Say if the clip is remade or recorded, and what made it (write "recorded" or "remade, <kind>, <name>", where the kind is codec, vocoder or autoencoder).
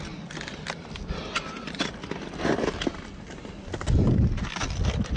recorded